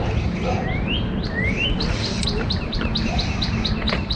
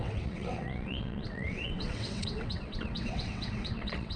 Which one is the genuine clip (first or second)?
first